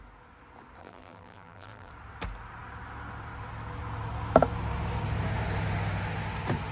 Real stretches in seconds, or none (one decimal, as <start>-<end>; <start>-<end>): 0.0-0.8; 1.9-6.7